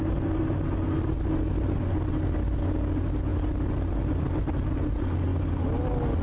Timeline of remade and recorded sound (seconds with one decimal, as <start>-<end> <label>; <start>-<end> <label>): 0.0-6.2 recorded